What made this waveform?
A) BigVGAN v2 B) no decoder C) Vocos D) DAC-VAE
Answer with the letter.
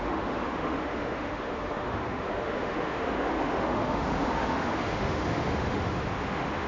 D